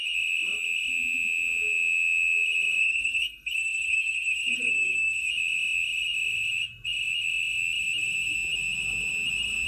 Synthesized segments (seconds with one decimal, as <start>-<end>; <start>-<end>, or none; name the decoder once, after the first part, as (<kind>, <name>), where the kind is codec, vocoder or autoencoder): 2.8-5.3 (codec, SNAC)